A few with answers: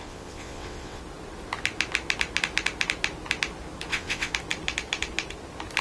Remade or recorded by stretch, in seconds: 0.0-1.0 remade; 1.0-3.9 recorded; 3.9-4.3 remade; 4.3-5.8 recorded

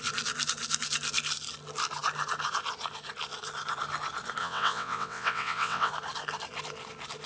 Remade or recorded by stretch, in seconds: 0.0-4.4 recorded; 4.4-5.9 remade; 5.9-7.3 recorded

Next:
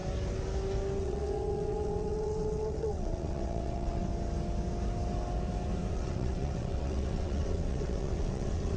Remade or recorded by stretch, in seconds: 0.0-1.0 recorded; 1.0-4.1 remade; 4.1-5.9 recorded; 5.9-8.8 remade